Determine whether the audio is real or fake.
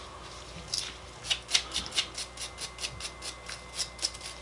real